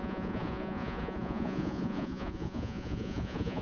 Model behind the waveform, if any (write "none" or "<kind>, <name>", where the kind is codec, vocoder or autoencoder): vocoder, Vocos